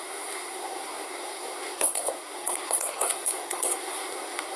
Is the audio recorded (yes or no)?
no